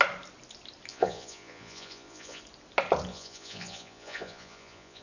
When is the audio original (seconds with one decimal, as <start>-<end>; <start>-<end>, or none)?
0.0-0.9; 2.4-3.1